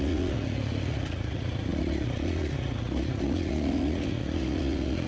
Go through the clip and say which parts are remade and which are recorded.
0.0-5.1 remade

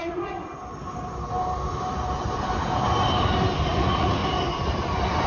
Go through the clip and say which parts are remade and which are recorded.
0.0-0.5 remade; 0.5-3.7 recorded; 3.7-4.2 remade; 4.2-5.3 recorded

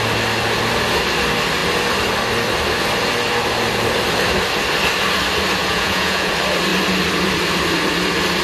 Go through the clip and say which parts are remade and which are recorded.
0.0-5.6 recorded; 5.6-6.3 remade; 6.3-8.4 recorded

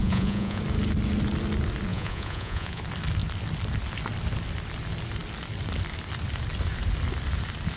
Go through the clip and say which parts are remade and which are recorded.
0.0-0.6 remade; 0.6-1.9 recorded; 1.9-2.8 remade; 2.8-7.8 recorded